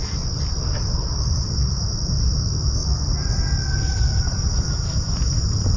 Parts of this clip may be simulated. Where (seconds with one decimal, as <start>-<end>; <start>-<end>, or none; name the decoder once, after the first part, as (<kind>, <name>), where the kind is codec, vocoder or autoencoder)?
none

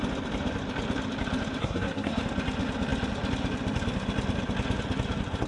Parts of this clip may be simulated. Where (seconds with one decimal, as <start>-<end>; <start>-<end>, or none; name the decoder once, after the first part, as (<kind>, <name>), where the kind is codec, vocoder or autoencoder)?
1.6-2.2 (codec, SNAC)